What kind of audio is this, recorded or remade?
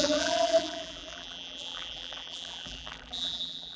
remade